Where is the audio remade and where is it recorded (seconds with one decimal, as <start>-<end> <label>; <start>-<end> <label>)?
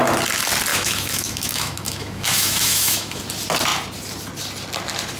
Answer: 0.0-0.7 recorded; 0.7-3.2 remade; 3.2-5.2 recorded